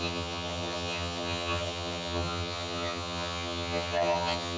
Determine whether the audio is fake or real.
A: fake